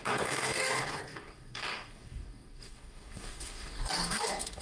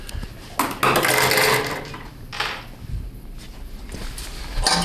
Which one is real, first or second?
second